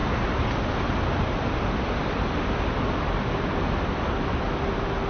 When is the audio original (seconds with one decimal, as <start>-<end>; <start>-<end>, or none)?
0.0-5.1